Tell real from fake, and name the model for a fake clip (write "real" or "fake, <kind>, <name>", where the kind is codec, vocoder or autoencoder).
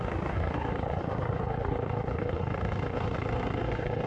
fake, codec, SNAC